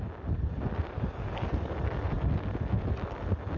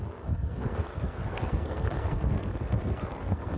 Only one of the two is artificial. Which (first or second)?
second